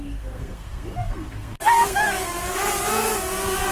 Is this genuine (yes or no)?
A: no